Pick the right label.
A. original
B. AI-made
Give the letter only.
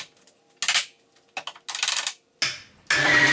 A